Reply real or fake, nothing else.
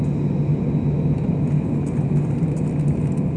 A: real